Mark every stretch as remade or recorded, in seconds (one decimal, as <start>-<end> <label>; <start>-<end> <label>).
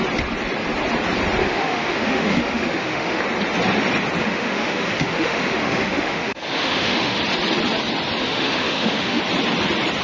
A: 0.0-1.4 recorded; 1.4-3.2 remade; 3.2-4.2 recorded; 4.2-7.2 remade; 7.2-8.2 recorded; 8.2-9.2 remade; 9.2-10.0 recorded